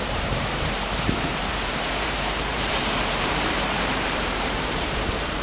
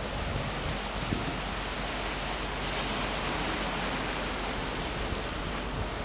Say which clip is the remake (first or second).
first